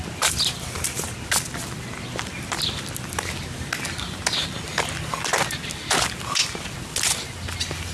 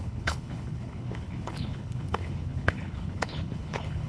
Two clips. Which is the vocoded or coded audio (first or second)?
second